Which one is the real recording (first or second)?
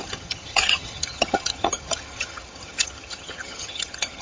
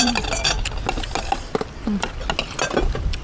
second